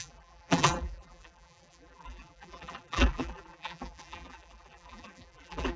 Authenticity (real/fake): fake